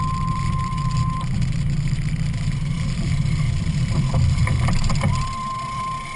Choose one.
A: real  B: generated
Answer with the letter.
B